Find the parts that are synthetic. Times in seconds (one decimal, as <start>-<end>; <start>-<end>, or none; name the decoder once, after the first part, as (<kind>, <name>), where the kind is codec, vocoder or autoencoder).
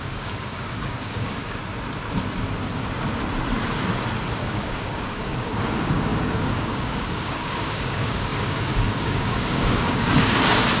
0.0-1.6 (codec, DAC); 4.4-10.8